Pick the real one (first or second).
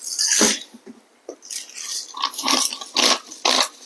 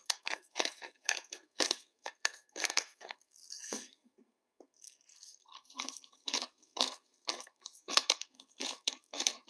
first